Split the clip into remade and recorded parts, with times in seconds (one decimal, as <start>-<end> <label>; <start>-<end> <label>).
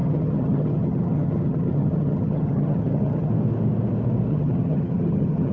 0.0-3.3 remade; 3.3-4.3 recorded; 4.3-5.5 remade